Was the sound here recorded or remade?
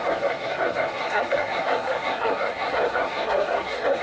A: remade